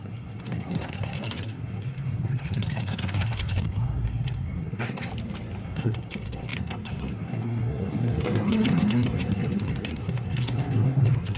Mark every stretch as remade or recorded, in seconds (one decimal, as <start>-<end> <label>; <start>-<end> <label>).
0.0-5.1 remade; 5.1-5.6 recorded; 5.6-11.4 remade